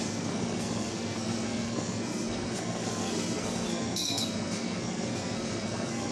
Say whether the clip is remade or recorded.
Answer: remade